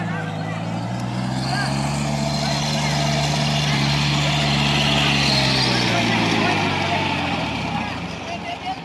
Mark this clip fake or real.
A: real